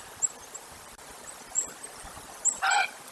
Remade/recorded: recorded